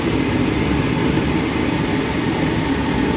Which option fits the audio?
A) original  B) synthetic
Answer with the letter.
A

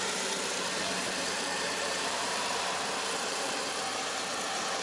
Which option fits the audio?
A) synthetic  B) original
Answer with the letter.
A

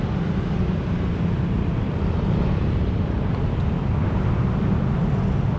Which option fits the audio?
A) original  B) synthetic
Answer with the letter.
A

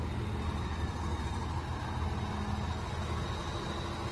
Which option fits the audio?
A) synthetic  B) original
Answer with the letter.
B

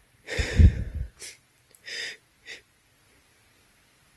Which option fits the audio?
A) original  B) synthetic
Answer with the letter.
A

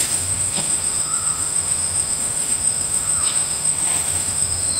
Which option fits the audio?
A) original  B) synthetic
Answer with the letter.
B